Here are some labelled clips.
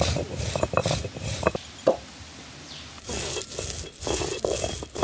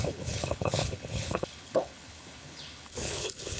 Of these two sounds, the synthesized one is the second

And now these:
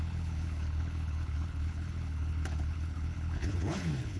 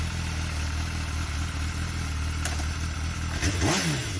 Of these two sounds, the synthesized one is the first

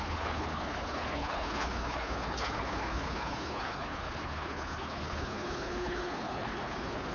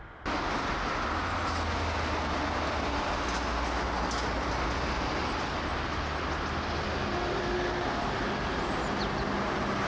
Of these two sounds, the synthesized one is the first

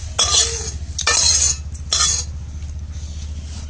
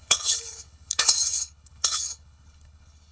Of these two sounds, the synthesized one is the second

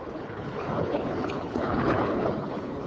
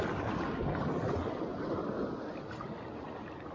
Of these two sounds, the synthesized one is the first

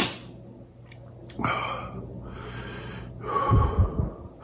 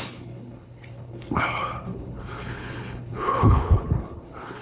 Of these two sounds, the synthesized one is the second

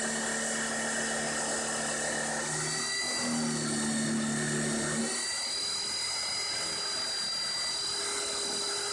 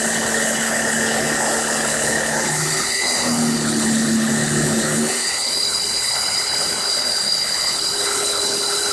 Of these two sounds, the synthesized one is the second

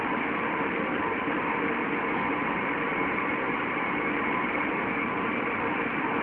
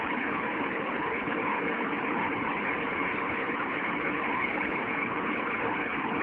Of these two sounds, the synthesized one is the second